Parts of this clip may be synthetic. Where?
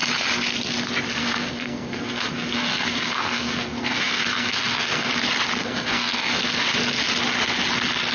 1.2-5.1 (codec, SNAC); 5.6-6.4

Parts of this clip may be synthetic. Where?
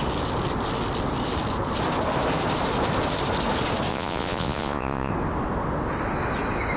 3.9-5.1 (vocoder, Vocos)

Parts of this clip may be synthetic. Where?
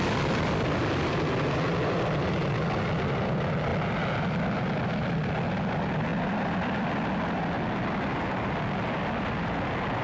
none